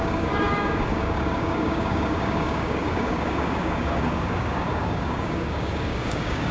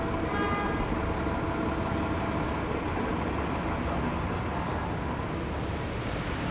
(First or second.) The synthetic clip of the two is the first